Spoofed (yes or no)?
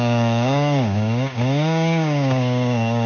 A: yes